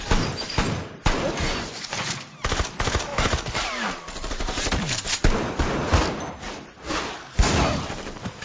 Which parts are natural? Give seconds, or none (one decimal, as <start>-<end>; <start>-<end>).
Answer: 0.0-1.4; 2.1-8.4